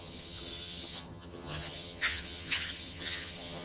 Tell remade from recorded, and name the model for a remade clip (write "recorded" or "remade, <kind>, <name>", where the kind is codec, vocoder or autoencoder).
remade, vocoder, HiFi-GAN